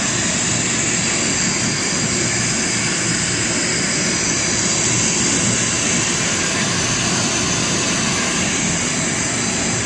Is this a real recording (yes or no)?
yes